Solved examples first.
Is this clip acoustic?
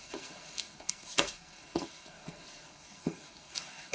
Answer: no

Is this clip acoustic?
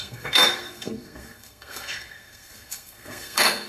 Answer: no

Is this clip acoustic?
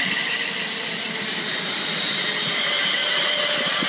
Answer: yes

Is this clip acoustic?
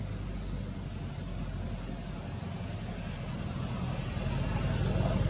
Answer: yes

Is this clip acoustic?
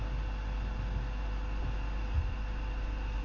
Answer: yes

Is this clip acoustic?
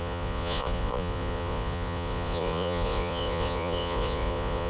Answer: no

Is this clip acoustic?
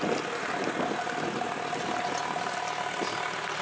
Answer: yes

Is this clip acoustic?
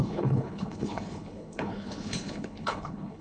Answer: no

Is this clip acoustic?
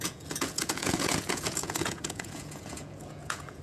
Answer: no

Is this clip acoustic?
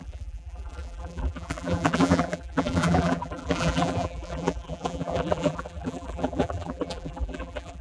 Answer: no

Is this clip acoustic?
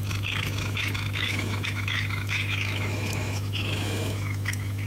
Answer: no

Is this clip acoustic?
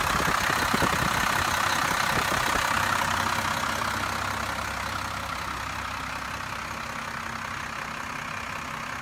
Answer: yes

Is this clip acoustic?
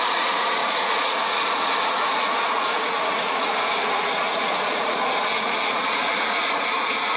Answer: no